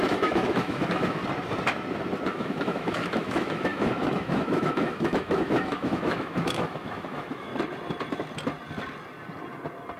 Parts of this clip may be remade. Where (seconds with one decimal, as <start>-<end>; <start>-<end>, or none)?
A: 0.0-1.2; 2.3-7.5